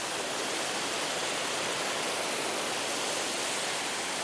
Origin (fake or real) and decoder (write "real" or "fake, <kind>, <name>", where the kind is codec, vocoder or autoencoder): real